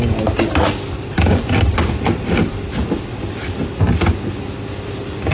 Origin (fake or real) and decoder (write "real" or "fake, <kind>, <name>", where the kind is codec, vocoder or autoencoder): real